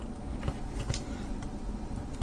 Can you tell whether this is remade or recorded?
remade